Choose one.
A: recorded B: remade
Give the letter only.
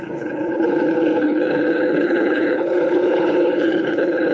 B